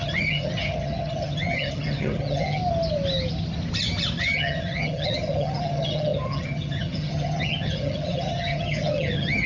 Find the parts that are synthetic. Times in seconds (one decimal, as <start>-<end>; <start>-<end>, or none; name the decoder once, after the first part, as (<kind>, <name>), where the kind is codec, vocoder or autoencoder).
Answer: 0.0-2.6 (vocoder, HiFi-GAN); 4.2-9.5